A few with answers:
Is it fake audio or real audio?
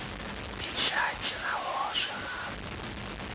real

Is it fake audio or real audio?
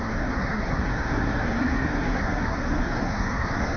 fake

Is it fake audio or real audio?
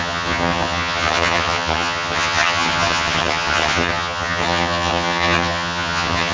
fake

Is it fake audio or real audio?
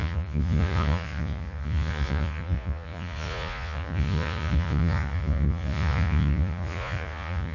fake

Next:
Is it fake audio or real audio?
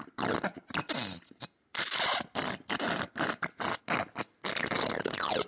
real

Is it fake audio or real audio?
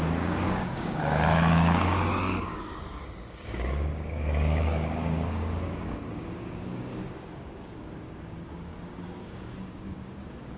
fake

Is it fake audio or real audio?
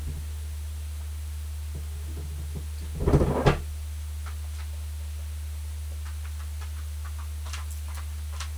real